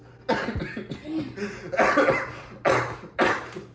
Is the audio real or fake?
real